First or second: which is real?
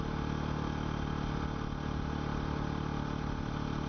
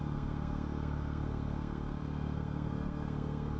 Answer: first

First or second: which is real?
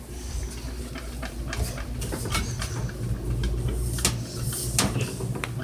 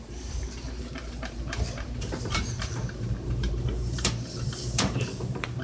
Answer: first